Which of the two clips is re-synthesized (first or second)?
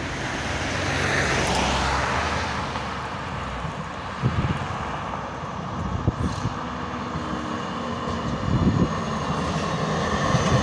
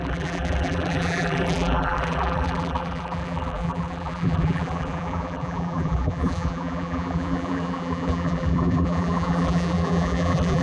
second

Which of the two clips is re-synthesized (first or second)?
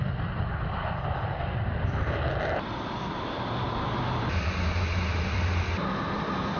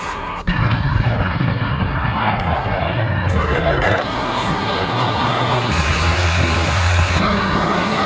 second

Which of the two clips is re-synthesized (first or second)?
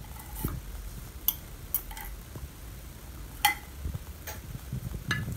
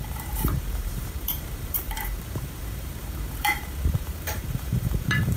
second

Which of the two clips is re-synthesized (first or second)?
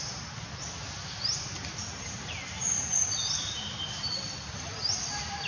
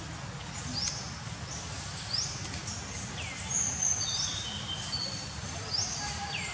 first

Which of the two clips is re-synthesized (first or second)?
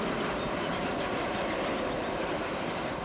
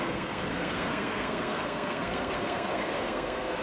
second